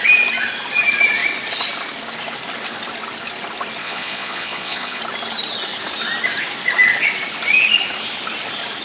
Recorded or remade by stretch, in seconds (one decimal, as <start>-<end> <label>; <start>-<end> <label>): 0.0-3.8 recorded; 3.8-5.0 remade; 5.0-8.8 recorded